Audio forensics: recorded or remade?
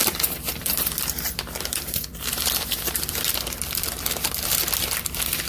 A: remade